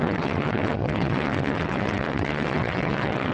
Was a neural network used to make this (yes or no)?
yes